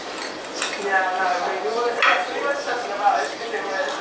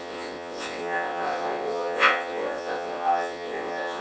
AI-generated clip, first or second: second